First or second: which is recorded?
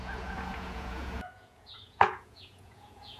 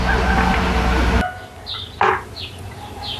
second